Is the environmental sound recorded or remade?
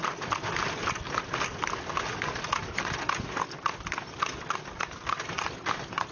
recorded